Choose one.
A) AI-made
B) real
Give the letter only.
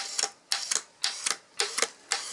B